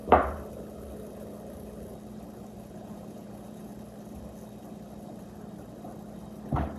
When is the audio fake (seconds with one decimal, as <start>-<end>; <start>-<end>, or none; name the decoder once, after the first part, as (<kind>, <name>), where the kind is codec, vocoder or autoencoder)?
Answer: 2.7-3.7 (vocoder, Vocos)